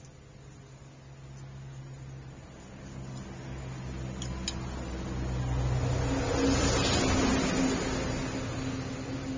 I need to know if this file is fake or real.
real